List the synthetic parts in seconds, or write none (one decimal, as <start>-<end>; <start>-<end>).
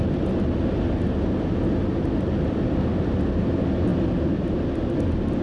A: none